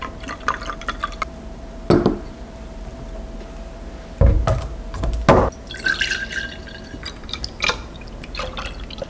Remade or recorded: recorded